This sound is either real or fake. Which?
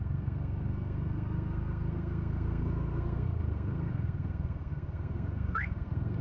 fake